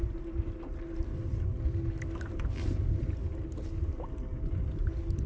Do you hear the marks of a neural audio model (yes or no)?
no